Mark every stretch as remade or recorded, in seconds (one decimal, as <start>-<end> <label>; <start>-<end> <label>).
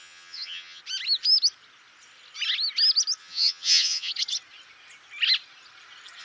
0.0-0.8 remade; 0.8-3.2 recorded; 3.2-4.1 remade; 4.1-6.2 recorded